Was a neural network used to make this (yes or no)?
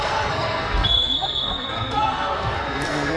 yes